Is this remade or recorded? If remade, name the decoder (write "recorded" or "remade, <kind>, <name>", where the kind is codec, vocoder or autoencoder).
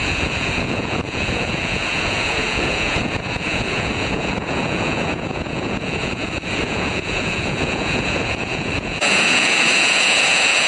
remade, vocoder, Vocos